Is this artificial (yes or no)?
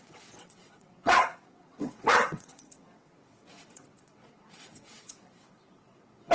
yes